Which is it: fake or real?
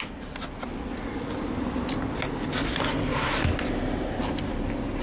real